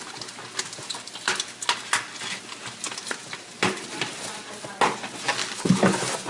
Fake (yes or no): no